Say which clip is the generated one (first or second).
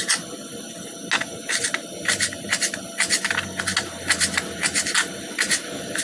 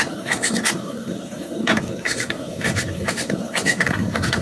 second